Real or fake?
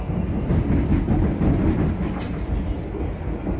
real